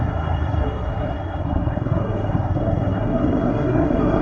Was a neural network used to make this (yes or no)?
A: yes